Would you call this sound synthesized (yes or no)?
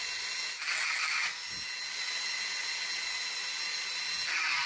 no